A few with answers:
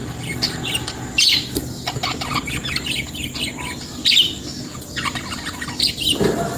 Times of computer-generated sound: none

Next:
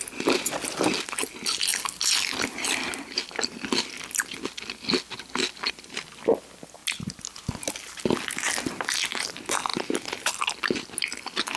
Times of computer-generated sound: 9.7-10.3

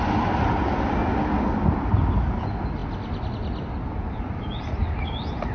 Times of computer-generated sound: none

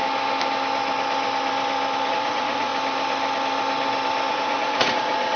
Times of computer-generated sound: 2.1-2.7; 4.3-5.4

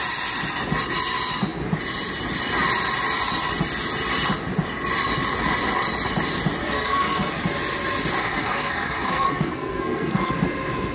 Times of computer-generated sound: 6.6-7.4; 8.2-10.3

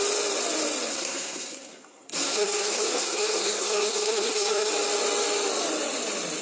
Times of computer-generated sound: 0.9-4.7

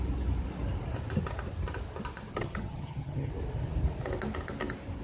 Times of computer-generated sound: 2.3-3.3